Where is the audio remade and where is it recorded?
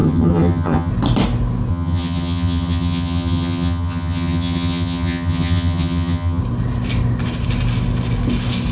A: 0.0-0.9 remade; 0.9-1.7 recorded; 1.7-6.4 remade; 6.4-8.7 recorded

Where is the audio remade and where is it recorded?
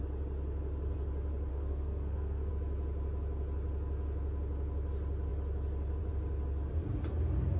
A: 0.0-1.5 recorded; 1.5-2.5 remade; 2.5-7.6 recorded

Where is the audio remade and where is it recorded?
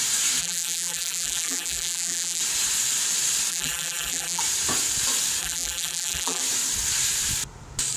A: 0.0-0.4 recorded; 0.4-2.4 remade; 2.4-3.5 recorded; 3.5-4.4 remade; 4.4-5.4 recorded; 5.4-6.4 remade; 6.4-8.0 recorded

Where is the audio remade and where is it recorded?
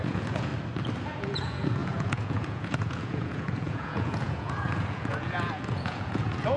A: 0.0-0.5 remade; 0.5-1.2 recorded; 1.2-6.6 remade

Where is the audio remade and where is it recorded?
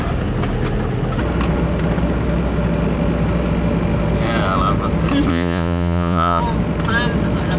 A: 0.0-5.3 recorded; 5.3-6.4 remade; 6.4-7.6 recorded